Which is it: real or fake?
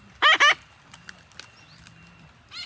real